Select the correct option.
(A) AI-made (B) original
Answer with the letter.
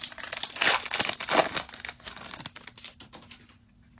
B